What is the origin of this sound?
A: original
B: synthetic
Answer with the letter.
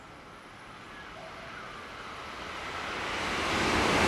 A